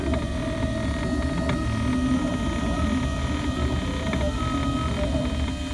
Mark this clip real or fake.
real